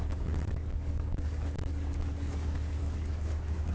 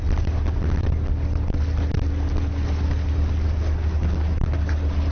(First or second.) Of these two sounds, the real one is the second